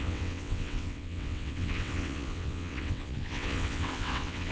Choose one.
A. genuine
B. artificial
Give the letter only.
B